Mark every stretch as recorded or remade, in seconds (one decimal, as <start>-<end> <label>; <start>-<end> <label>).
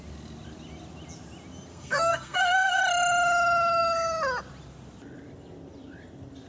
0.0-1.7 recorded; 1.7-2.8 remade; 2.8-6.5 recorded